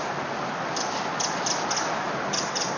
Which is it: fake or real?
real